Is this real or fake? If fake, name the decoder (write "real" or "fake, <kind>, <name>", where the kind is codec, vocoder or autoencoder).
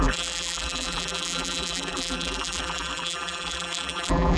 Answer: fake, vocoder, BigVGAN v2